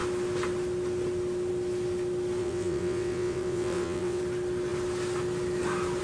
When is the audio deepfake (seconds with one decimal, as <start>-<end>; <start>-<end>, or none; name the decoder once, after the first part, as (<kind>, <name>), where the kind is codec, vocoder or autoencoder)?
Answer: 2.4-4.2 (vocoder, WaveNeXt)